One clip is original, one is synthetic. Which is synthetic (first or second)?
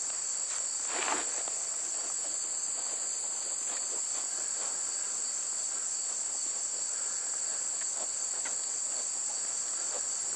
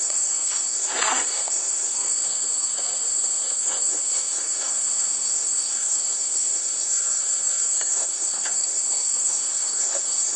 second